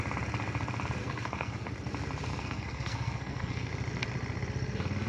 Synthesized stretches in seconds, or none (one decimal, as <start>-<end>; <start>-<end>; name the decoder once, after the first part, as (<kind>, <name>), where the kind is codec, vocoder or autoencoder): 1.0-1.7 (codec, SNAC); 2.3-3.7